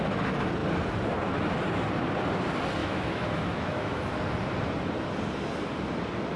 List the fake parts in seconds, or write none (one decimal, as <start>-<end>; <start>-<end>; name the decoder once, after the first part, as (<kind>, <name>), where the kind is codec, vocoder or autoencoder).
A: 2.8-4.1 (autoencoder, DAC-VAE)